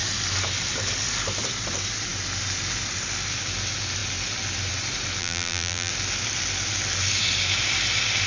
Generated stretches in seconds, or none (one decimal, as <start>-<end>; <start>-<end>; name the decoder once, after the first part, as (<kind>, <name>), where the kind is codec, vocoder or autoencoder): 5.2-5.9 (vocoder, BigVGAN v2)